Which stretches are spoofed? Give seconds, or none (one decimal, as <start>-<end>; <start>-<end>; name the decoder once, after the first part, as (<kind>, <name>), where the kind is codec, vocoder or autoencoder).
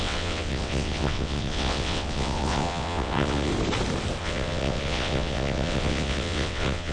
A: 0.0-3.5 (vocoder, WaveNeXt); 4.2-6.9